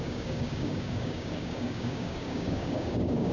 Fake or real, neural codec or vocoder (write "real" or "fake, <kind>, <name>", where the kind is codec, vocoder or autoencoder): fake, codec, DAC